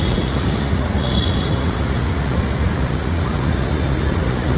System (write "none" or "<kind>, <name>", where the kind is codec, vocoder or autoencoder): vocoder, Vocos